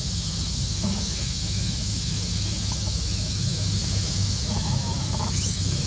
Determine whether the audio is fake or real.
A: fake